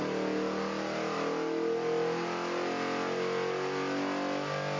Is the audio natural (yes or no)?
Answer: yes